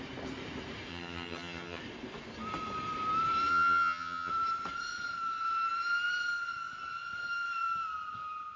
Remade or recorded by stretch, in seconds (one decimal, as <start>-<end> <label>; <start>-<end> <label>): 0.0-0.9 recorded; 0.9-1.8 remade; 1.8-3.5 recorded; 3.5-4.3 remade; 4.3-8.6 recorded